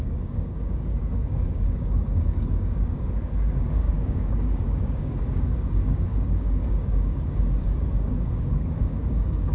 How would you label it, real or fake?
fake